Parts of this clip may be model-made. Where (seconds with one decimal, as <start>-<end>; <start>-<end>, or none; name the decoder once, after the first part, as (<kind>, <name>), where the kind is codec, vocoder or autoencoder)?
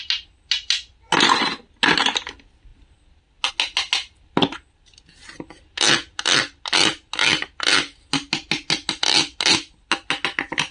none